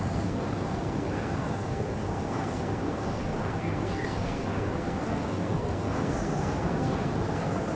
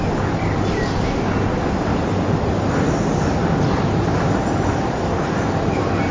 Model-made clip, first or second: first